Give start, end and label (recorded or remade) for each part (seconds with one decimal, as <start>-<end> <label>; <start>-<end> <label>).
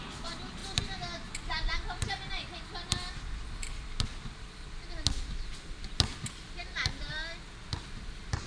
0.0-8.5 recorded